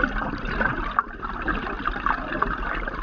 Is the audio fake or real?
real